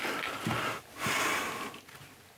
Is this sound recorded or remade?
recorded